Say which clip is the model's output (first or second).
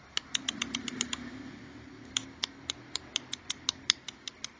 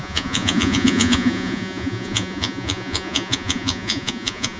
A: second